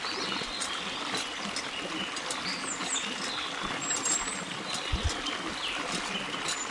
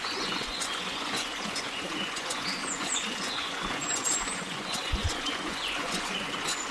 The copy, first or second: second